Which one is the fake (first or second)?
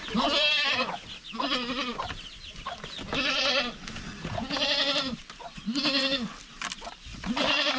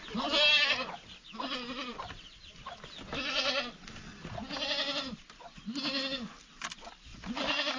first